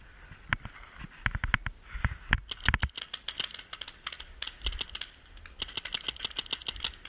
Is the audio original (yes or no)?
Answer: yes